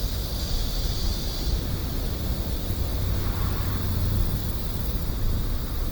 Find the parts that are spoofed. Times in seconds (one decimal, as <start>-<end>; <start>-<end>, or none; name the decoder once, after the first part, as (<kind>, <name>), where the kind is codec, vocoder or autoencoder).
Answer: 0.6-1.3 (vocoder, BigVGAN v2)